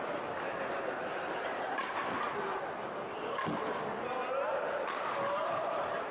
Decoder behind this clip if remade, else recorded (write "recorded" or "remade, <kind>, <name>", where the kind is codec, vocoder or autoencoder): recorded